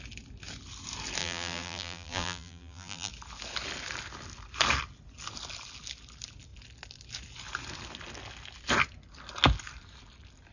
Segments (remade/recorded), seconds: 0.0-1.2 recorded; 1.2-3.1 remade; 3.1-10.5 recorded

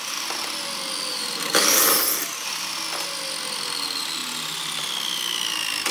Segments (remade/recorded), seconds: 0.0-1.1 recorded; 1.1-2.0 remade; 2.0-5.9 recorded

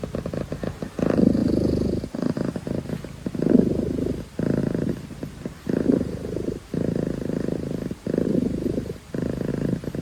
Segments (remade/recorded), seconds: 0.0-4.6 recorded; 4.6-9.5 remade; 9.5-10.0 recorded

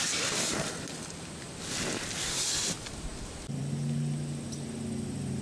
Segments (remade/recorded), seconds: 0.0-5.4 recorded